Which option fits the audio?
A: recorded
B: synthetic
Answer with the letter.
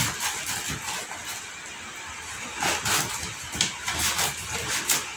A